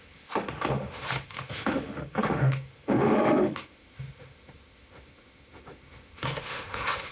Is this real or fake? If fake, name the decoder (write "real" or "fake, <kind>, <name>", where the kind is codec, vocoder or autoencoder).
fake, autoencoder, DAC-VAE